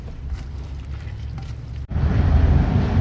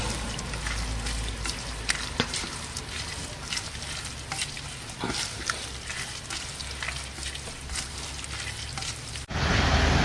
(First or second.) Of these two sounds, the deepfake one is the first